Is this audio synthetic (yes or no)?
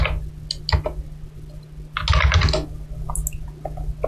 no